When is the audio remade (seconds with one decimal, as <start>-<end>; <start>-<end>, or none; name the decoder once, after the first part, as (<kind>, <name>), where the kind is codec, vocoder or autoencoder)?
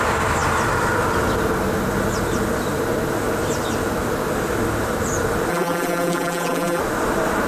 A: 5.5-6.8 (vocoder, BigVGAN v2)